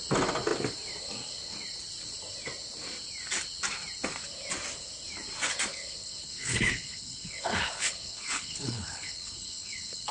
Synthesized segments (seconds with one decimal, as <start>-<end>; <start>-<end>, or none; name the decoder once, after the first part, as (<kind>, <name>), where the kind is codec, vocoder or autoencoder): 5.7-10.1 (codec, HILCodec)